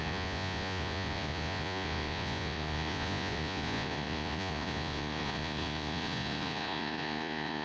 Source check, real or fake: fake